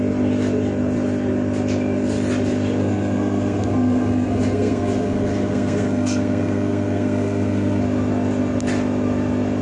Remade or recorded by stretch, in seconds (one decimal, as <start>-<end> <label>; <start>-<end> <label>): 0.0-2.8 recorded; 2.8-7.8 remade; 7.8-9.6 recorded